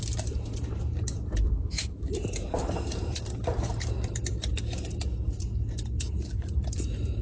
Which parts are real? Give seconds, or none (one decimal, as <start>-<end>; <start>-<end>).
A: 4.5-5.2